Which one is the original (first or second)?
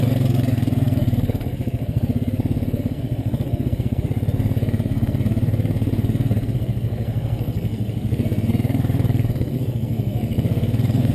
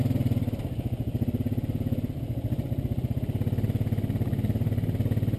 second